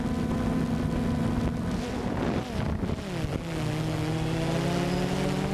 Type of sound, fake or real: real